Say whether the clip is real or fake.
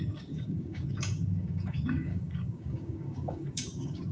fake